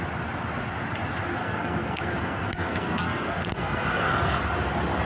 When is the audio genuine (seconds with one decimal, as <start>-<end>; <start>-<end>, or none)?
0.0-1.4; 4.4-5.0